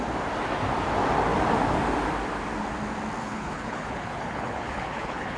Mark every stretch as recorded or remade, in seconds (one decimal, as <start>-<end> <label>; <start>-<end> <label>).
0.0-3.2 recorded; 3.2-5.4 remade